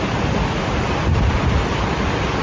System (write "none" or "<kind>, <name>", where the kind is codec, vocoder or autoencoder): vocoder, BigVGAN v2